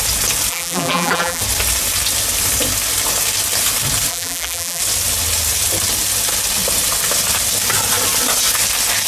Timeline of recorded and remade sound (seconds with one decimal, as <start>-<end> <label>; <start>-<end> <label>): 0.0-0.5 recorded; 0.5-1.4 remade; 1.4-4.1 recorded; 4.1-4.8 remade; 4.8-9.1 recorded